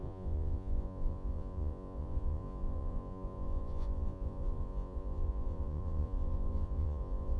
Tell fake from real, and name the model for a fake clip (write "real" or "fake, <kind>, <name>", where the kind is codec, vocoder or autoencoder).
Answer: fake, vocoder, Vocos